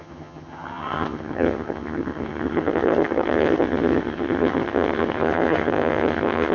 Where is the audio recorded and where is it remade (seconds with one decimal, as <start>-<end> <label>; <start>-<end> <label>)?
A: 0.0-6.5 remade